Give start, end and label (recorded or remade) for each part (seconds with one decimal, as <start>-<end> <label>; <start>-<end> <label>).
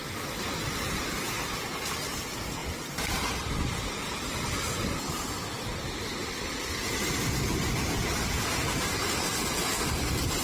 0.0-10.4 recorded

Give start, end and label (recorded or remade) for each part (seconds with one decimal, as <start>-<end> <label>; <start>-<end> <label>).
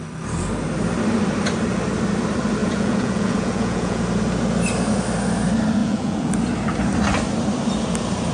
0.0-2.6 recorded; 2.6-4.0 remade; 4.0-5.8 recorded; 5.8-6.3 remade; 6.3-8.3 recorded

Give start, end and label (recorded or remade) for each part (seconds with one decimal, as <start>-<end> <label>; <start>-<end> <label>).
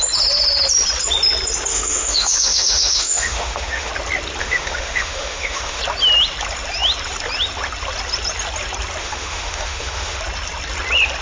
0.0-1.7 recorded; 1.7-3.9 remade; 3.9-4.4 recorded; 4.4-5.8 remade; 5.8-9.0 recorded; 9.0-10.2 remade; 10.2-11.2 recorded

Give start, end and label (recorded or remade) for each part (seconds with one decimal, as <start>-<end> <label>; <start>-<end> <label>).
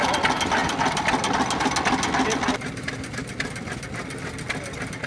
0.0-5.1 recorded